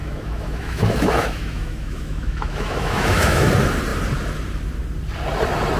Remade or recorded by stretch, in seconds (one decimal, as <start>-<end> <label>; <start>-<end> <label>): 0.0-3.5 remade; 3.5-5.8 recorded